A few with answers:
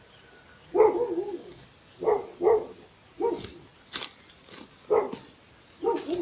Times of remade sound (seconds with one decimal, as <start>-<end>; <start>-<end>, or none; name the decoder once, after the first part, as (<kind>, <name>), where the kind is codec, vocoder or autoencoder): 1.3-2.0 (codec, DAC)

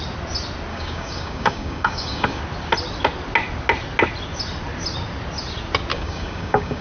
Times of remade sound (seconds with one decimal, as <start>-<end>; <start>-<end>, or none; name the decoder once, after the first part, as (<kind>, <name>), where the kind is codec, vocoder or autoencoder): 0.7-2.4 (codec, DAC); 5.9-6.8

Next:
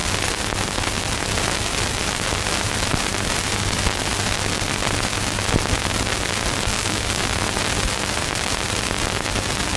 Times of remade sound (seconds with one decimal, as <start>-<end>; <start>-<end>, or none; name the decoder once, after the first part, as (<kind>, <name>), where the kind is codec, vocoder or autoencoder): 6.7-7.3 (codec, DAC)